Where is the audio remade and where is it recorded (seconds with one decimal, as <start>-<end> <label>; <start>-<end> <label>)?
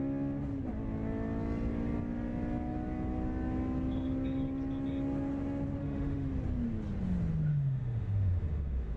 0.0-5.8 recorded; 5.8-6.3 remade; 6.3-7.5 recorded; 7.5-9.0 remade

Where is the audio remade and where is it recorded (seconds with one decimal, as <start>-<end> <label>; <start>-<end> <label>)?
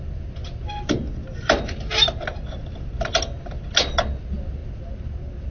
0.0-5.5 recorded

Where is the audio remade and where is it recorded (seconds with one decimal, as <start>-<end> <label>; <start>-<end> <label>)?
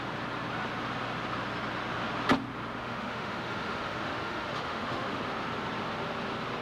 0.0-2.8 recorded; 2.8-5.2 remade; 5.2-6.6 recorded